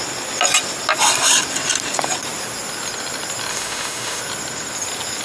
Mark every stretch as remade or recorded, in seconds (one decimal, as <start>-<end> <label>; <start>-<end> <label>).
0.0-3.5 recorded; 3.5-4.2 remade; 4.2-5.2 recorded